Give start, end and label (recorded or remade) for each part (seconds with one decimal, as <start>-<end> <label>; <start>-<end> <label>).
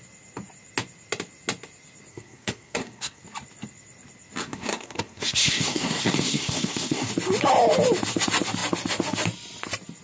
0.0-2.1 recorded; 2.1-3.2 remade; 3.2-4.4 recorded; 4.4-7.1 remade; 7.1-10.0 recorded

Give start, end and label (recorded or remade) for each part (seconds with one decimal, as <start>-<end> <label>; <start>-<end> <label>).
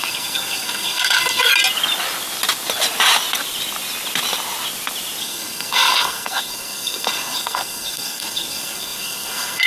0.0-1.5 remade; 1.5-5.2 recorded; 5.2-9.7 remade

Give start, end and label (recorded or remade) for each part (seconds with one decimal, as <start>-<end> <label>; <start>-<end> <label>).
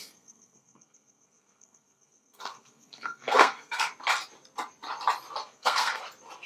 0.0-3.9 remade; 3.9-5.4 recorded; 5.4-6.0 remade; 6.0-6.5 recorded